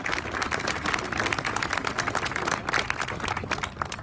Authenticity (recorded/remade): recorded